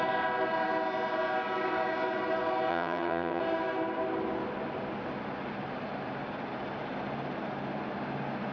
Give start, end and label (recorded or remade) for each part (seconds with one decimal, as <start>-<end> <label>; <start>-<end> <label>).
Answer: 0.0-2.7 recorded; 2.7-3.4 remade; 3.4-8.5 recorded